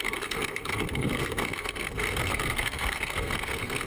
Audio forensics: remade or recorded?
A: remade